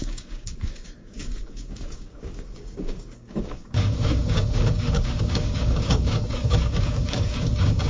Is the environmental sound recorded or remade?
remade